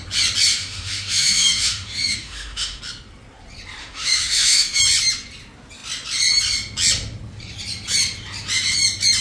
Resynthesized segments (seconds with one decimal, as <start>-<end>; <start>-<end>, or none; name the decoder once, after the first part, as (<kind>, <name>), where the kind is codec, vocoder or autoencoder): 0.5-2.8 (autoencoder, DAC-VAE); 3.8-4.8